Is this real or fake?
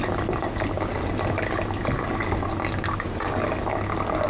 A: real